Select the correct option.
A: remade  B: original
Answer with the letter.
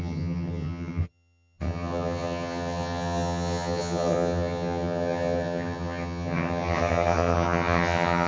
A